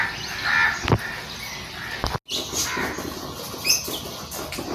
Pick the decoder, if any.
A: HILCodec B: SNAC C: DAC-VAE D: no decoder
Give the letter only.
D